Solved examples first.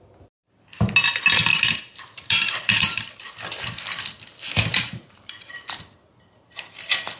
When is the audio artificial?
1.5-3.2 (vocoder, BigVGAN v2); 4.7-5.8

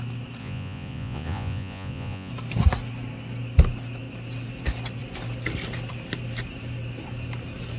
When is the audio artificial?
0.4-2.3 (vocoder, Vocos)